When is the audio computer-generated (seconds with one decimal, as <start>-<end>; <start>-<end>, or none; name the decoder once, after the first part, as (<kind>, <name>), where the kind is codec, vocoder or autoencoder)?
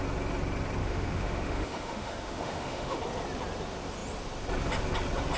0.8-3.0 (autoencoder, DAC-VAE)